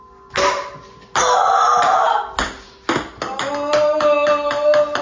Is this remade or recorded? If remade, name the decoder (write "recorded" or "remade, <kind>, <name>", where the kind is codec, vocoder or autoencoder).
recorded